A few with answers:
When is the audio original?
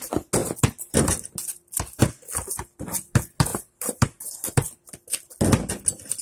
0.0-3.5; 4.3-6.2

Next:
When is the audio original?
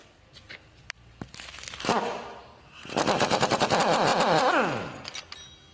0.0-5.7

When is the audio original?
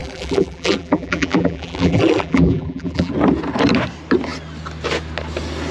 3.1-5.7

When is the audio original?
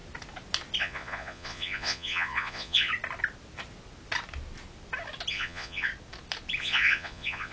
0.0-0.8; 2.9-5.3; 5.9-6.6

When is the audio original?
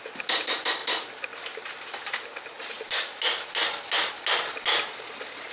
0.0-5.5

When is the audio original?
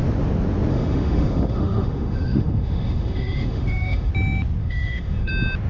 0.0-0.7; 4.1-4.6; 5.3-5.7